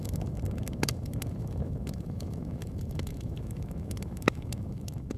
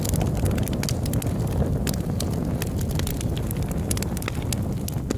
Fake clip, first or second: first